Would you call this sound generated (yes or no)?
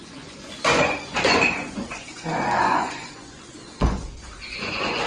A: yes